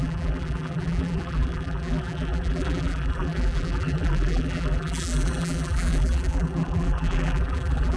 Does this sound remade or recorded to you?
remade